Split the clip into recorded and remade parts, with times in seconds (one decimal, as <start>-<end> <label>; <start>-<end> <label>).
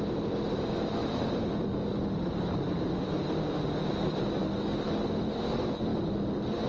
0.0-1.0 recorded; 1.0-1.9 remade; 1.9-6.7 recorded